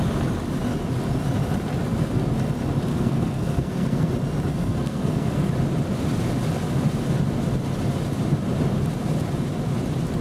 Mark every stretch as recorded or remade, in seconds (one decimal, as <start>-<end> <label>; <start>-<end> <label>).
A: 0.0-2.9 recorded; 2.9-4.1 remade; 4.1-4.5 recorded; 4.5-5.5 remade; 5.5-10.2 recorded